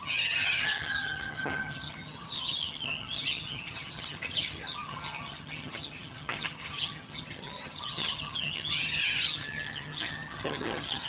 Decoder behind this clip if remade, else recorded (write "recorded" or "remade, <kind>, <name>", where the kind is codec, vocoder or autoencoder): remade, vocoder, HiFi-GAN